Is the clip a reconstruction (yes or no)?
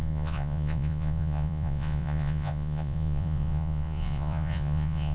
yes